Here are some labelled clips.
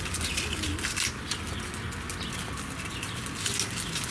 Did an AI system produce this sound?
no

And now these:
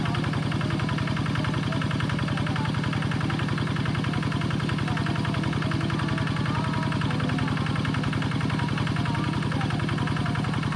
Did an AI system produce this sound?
no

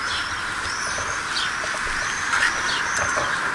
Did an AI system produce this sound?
no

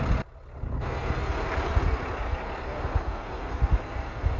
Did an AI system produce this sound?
no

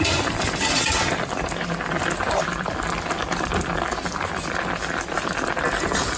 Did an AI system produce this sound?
yes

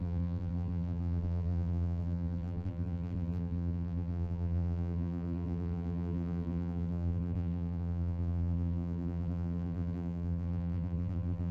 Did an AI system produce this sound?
yes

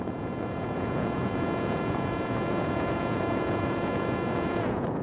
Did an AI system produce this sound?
yes